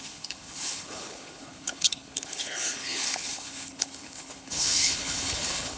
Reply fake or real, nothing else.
fake